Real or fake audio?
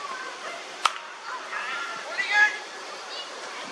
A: fake